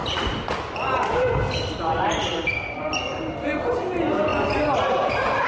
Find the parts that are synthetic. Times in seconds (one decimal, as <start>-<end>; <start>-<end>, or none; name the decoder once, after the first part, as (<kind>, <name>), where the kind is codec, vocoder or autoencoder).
none